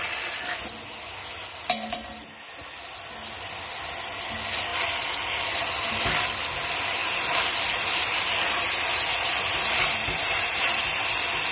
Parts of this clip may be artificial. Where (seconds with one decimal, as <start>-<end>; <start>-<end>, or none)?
7.0-11.0